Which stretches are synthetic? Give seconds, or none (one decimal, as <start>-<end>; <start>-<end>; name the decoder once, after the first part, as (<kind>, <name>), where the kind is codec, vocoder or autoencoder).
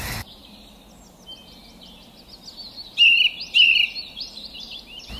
0.0-0.4 (vocoder, BigVGAN v2); 3.5-5.2